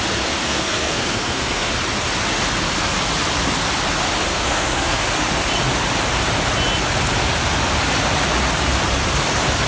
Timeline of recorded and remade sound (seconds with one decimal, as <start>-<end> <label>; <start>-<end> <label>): 0.0-0.4 recorded; 0.4-1.7 remade; 1.7-4.3 recorded; 4.3-5.0 remade; 5.0-9.7 recorded